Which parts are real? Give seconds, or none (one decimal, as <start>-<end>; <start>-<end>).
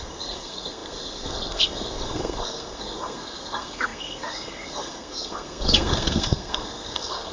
none